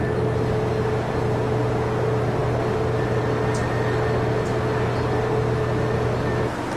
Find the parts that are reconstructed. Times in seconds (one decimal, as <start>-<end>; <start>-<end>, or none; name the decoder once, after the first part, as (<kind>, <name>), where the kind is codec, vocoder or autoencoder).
none

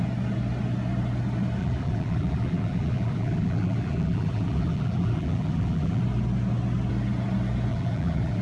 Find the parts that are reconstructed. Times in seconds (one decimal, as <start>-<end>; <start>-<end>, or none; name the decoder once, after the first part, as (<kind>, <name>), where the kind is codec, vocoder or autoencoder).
1.6-6.0 (vocoder, BigVGAN v2); 7.7-8.4

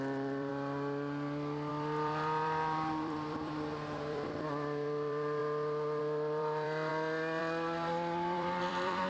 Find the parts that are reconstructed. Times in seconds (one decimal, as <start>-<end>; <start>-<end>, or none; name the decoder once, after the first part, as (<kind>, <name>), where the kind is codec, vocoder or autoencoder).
0.0-0.5 (vocoder, BigVGAN v2); 1.7-5.4; 6.0-6.9; 7.4-9.1